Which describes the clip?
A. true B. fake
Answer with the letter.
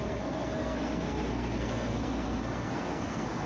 B